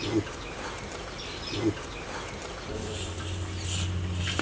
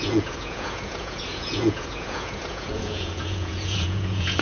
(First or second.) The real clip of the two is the first